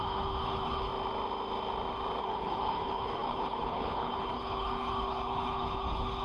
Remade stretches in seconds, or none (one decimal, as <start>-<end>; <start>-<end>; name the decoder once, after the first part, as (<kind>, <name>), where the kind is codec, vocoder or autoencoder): 0.0-0.9 (codec, HILCodec); 2.2-6.2